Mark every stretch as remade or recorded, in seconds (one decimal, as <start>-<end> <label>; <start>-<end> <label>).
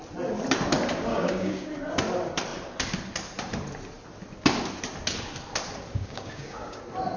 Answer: 0.0-1.1 recorded; 1.1-1.7 remade; 1.7-5.9 recorded; 5.9-6.8 remade; 6.8-7.2 recorded